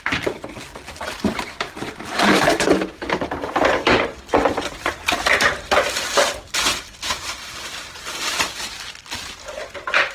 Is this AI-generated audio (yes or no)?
no